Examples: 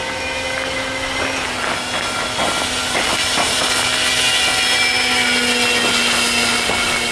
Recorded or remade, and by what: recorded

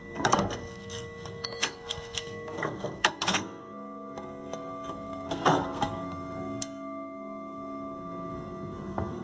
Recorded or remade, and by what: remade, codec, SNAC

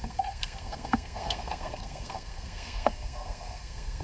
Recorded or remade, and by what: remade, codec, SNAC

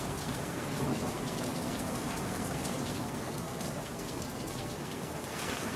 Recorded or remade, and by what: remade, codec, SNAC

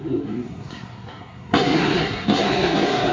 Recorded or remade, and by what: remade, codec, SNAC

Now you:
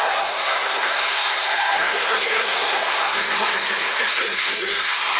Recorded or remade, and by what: remade, codec, SNAC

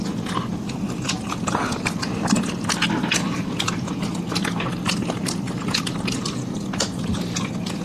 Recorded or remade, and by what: recorded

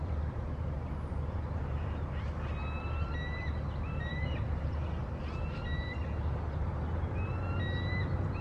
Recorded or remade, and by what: recorded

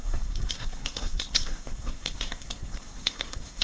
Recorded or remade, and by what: remade, codec, SNAC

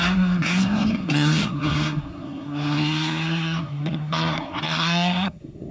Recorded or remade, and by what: remade, codec, SNAC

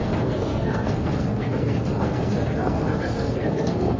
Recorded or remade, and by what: remade, codec, SNAC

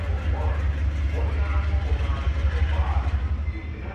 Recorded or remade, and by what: recorded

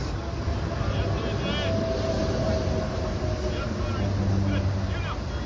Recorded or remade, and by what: recorded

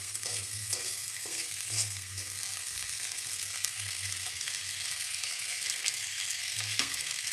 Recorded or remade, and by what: remade, codec, SNAC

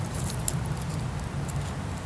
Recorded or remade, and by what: recorded